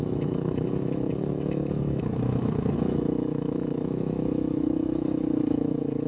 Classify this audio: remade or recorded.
remade